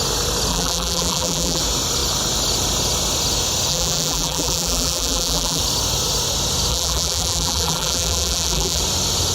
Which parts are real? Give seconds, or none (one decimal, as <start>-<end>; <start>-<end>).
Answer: 0.0-0.5; 1.6-3.7; 5.6-6.7; 8.8-9.3